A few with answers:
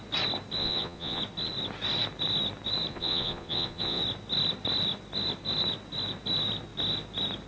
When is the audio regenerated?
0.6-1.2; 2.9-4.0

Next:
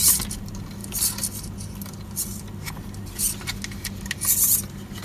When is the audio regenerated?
none

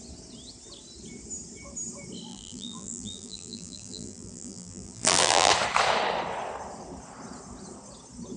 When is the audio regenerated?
2.3-5.5

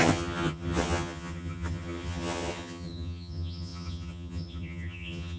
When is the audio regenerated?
0.0-5.4

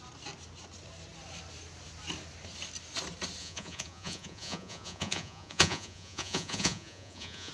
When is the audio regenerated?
3.4-7.5